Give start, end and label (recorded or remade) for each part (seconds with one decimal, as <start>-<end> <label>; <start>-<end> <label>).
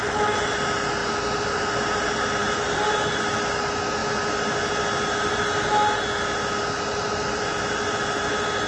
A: 0.0-8.7 recorded